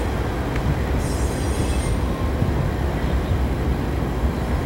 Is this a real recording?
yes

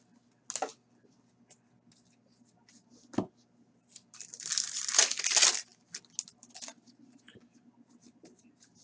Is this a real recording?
yes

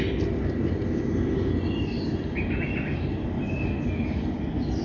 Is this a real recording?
yes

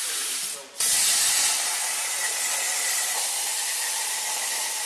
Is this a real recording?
yes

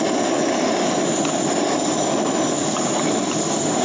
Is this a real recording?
yes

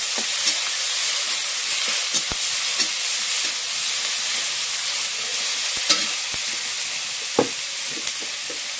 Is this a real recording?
yes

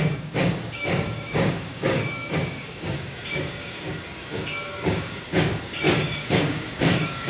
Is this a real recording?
no